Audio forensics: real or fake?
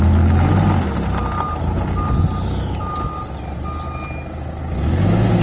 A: real